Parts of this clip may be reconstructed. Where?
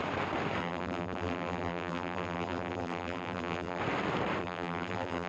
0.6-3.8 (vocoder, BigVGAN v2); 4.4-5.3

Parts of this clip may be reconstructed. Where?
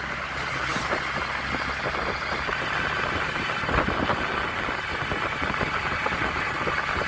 none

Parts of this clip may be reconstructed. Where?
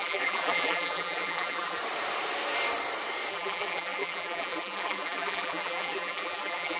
0.0-1.8 (vocoder, BigVGAN v2); 3.3-6.8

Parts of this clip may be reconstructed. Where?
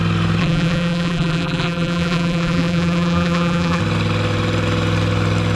0.4-3.8 (vocoder, BigVGAN v2)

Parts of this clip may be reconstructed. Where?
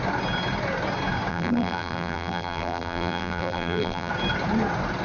1.3-4.1 (vocoder, BigVGAN v2)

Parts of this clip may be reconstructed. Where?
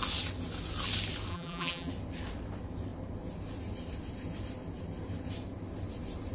1.3-1.9 (vocoder, BigVGAN v2)